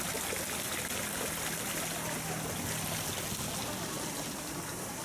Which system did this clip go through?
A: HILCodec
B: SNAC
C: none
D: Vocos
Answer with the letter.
C